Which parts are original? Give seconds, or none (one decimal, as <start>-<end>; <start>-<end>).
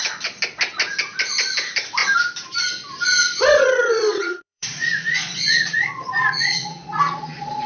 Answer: 0.0-3.2